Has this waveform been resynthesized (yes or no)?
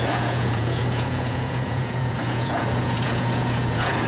yes